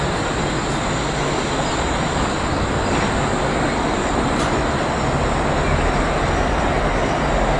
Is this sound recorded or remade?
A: recorded